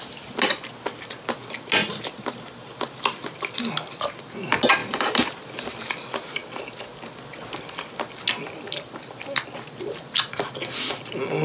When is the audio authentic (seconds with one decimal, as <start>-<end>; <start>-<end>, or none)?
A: 0.0-1.8; 3.6-4.8; 5.6-11.4